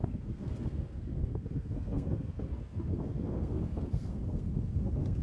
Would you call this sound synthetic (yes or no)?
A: yes